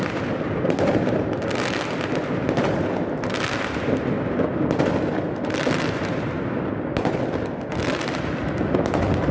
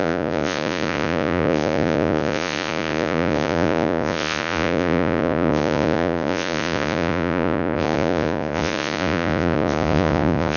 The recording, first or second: first